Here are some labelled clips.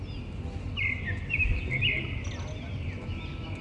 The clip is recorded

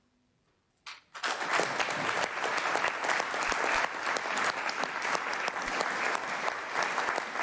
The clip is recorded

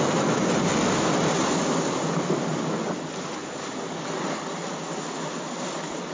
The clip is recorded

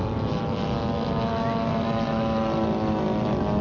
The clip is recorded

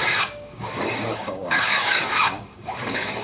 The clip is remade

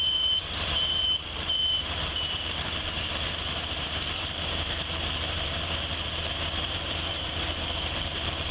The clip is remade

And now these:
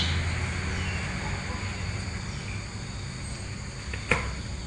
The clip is recorded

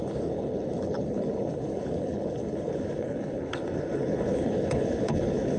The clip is remade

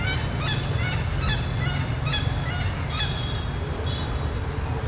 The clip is recorded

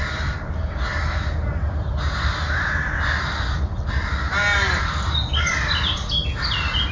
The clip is recorded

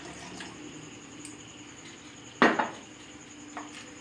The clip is recorded